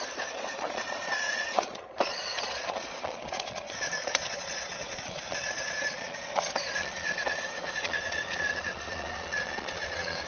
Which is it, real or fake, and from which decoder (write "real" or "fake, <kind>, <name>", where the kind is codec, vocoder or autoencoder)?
fake, vocoder, Vocos